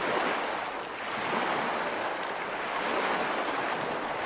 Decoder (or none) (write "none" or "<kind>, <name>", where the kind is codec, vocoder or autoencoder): none